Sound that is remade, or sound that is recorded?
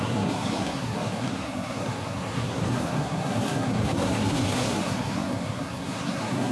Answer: remade